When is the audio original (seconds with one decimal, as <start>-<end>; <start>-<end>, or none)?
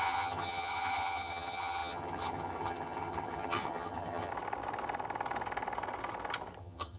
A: 4.3-6.6